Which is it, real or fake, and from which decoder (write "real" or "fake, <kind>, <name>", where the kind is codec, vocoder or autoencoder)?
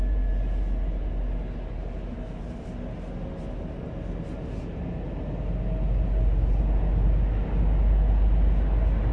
real